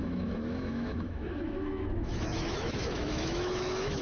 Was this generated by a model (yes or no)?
yes